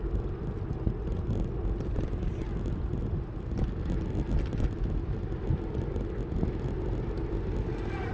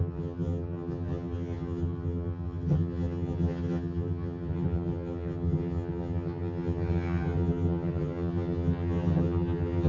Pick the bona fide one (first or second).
first